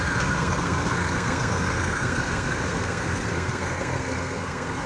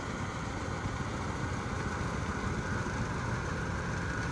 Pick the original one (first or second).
second